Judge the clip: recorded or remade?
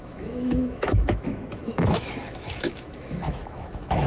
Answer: remade